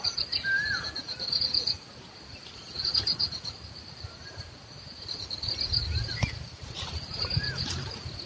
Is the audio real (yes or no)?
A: yes